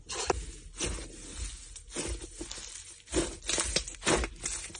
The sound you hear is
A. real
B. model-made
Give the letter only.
A